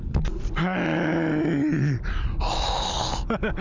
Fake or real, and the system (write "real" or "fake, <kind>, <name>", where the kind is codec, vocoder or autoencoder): real